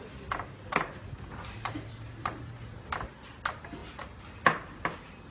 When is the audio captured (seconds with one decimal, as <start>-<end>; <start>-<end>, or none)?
0.0-5.3